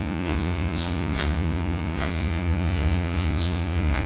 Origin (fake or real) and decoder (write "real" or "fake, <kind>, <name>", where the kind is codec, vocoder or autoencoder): fake, vocoder, Vocos